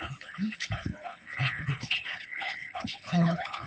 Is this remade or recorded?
remade